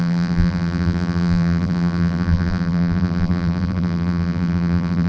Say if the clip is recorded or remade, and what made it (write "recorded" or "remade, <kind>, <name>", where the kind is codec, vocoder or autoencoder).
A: remade, vocoder, BigVGAN v2